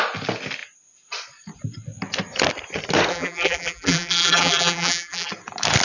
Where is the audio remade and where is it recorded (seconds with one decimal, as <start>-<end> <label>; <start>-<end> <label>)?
0.0-3.1 recorded; 3.1-5.3 remade; 5.3-5.8 recorded